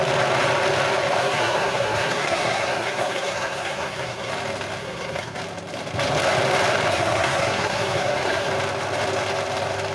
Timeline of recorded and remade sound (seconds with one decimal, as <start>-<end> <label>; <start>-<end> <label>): 0.0-1.2 recorded; 1.2-4.3 remade; 4.3-4.8 recorded; 4.8-5.4 remade; 5.4-6.9 recorded; 6.9-8.5 remade; 8.5-9.9 recorded